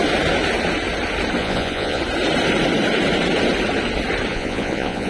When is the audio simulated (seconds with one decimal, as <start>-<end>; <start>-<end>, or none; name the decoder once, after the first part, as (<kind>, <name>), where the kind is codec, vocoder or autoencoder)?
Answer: 1.4-2.0 (vocoder, Vocos); 4.3-5.1